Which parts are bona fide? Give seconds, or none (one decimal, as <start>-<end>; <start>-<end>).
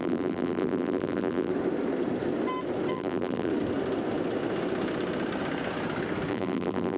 1.5-2.9; 3.5-6.3